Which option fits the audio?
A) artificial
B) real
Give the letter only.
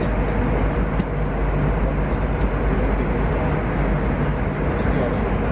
B